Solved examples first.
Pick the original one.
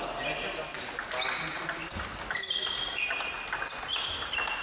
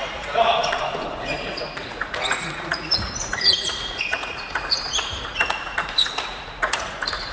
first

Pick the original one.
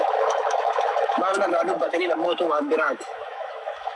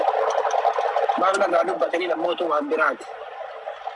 second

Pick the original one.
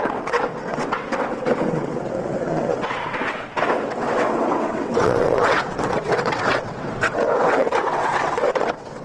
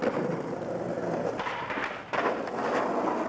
second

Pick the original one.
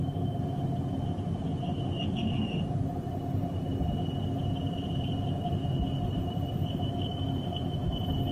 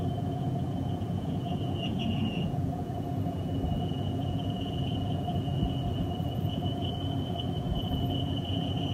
first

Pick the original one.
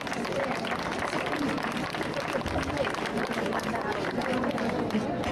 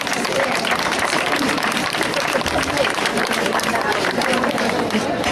first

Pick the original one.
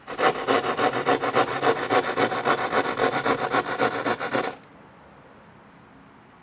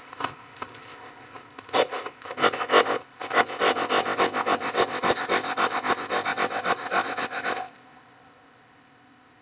first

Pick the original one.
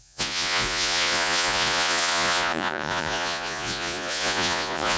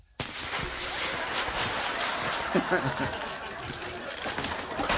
second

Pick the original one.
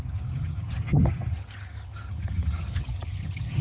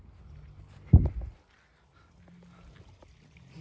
second